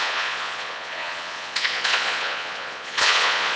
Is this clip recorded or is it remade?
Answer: remade